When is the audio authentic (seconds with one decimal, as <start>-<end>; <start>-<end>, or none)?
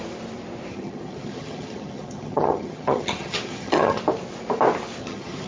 0.0-0.7; 4.0-5.0